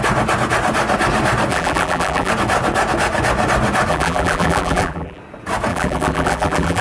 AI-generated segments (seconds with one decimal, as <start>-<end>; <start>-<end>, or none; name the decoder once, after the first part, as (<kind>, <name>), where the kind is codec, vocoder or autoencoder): 1.5-2.3 (vocoder, BigVGAN v2); 3.9-5.2; 5.7-6.8